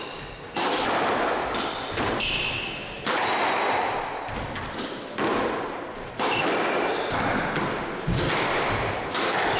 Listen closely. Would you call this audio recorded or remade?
recorded